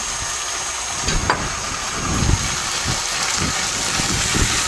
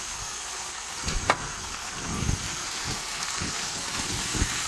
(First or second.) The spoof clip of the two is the second